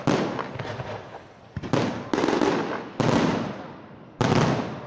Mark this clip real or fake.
real